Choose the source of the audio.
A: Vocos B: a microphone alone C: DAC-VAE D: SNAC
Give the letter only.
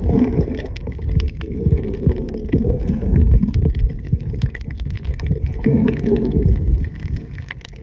D